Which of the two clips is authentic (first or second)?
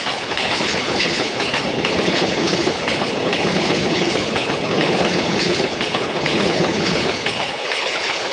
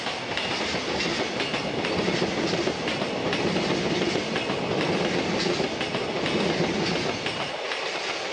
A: second